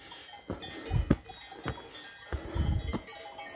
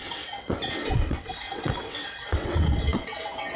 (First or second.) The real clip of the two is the first